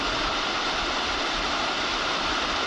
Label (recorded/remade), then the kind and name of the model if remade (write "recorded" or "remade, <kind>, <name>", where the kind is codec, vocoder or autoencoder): recorded